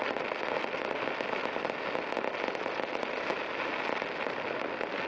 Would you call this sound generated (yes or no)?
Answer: no